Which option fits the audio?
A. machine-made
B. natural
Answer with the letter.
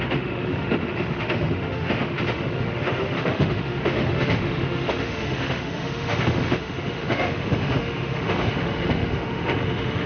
A